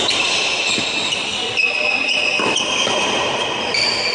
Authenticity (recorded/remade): recorded